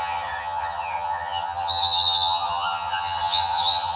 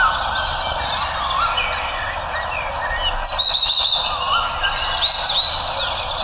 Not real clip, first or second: first